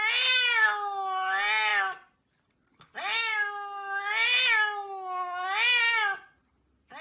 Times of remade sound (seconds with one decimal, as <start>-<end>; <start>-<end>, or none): none